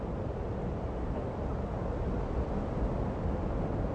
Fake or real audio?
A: real